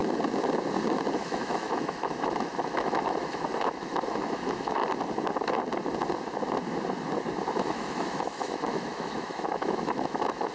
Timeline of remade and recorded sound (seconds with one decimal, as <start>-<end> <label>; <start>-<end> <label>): 0.0-1.2 recorded; 1.2-4.8 remade; 4.8-7.5 recorded; 7.5-10.5 remade